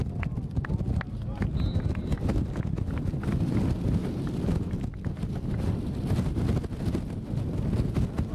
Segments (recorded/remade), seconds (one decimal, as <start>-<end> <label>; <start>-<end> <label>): 0.0-4.0 recorded; 4.0-4.7 remade; 4.7-8.3 recorded